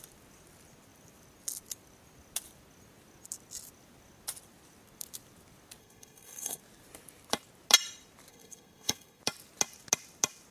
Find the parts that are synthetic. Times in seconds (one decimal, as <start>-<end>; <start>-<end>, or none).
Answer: 5.8-6.6; 8.3-9.2